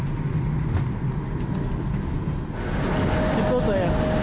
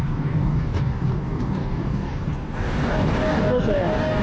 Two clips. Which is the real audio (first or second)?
first